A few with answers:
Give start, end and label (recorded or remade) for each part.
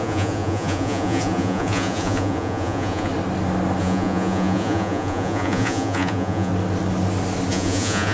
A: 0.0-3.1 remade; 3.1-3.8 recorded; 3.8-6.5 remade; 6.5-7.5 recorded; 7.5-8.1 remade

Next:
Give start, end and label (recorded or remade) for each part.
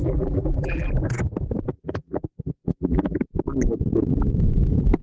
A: 0.0-0.9 remade; 0.9-1.7 recorded; 1.7-3.2 remade; 3.2-5.0 recorded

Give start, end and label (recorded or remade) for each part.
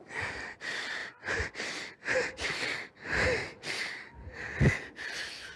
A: 0.0-5.6 recorded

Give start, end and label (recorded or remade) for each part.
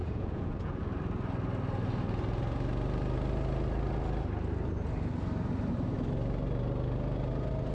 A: 0.0-0.8 remade; 0.8-7.7 recorded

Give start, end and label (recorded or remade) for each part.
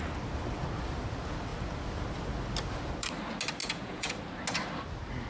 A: 0.0-3.6 recorded; 3.6-4.1 remade; 4.1-5.3 recorded